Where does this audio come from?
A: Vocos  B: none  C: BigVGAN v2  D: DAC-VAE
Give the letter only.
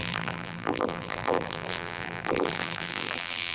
C